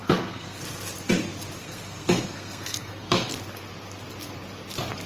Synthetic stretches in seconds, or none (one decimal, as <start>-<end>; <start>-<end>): 0.0-0.6; 1.6-3.3